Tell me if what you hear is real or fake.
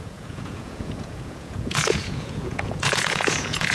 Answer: fake